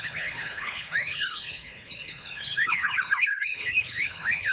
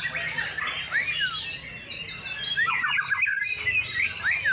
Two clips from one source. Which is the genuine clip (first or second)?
second